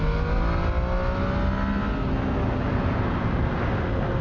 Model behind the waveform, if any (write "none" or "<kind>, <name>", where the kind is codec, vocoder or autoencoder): none